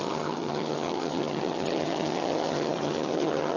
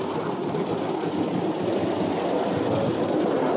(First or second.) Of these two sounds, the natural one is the second